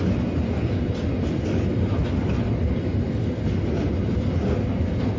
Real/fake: real